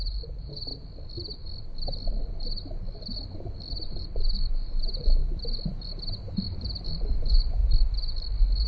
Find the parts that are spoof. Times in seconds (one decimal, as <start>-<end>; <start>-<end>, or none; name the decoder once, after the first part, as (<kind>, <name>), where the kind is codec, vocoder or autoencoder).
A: 0.0-0.7 (vocoder, BigVGAN v2); 4.0-5.2; 5.7-7.6